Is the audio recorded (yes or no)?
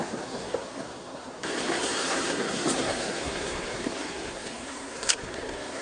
no